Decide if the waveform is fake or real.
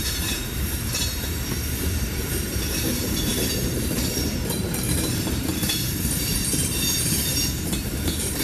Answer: fake